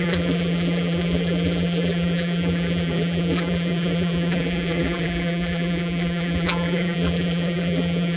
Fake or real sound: fake